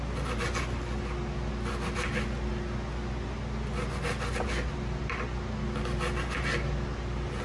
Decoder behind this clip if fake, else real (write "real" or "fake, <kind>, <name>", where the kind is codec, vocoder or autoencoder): real